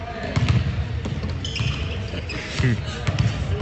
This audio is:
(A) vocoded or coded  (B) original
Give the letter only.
B